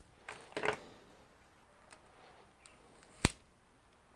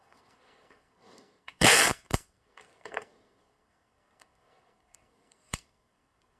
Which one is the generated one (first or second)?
second